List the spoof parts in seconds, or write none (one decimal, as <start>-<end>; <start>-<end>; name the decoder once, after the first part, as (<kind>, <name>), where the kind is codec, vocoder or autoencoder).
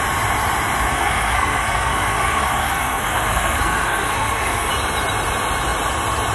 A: 0.9-4.7 (codec, SNAC)